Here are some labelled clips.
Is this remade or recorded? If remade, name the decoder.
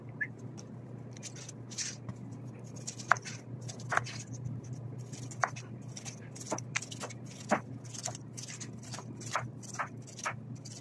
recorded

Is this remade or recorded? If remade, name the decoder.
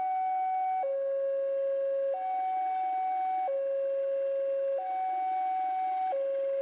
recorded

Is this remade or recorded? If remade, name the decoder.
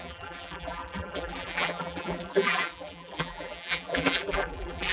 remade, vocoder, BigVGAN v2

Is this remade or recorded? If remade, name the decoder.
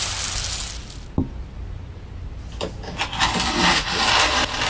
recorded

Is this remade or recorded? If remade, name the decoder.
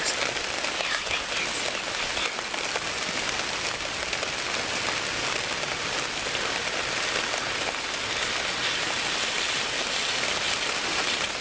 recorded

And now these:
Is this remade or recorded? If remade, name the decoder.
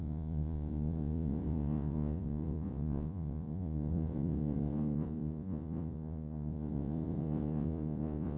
remade, vocoder, Vocos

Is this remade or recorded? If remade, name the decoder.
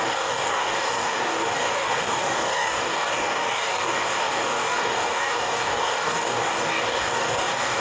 remade, codec, DAC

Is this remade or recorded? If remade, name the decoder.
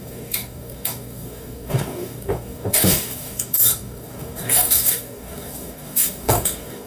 remade, codec, DAC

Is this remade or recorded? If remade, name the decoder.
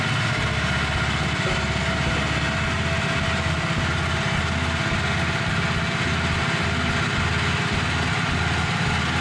recorded